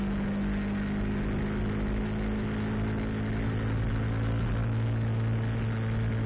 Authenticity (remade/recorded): recorded